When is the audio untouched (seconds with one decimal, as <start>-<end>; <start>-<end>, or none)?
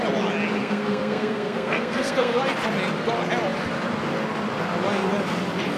0.0-0.6; 2.4-5.8